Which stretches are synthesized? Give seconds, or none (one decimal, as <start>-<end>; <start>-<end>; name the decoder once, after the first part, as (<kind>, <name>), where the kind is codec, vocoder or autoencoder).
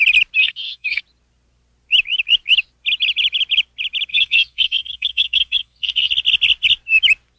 0.4-1.0 (codec, SNAC); 4.1-6.1